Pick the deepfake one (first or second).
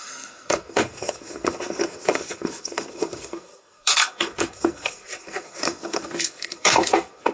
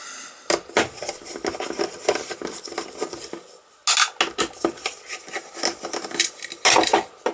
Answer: first